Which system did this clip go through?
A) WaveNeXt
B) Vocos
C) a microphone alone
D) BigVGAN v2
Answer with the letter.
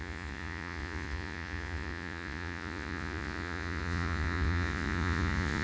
B